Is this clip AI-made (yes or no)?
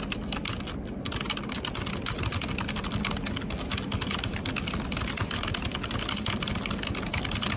no